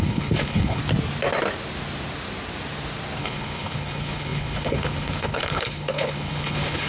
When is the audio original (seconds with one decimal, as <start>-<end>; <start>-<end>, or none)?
0.8-3.2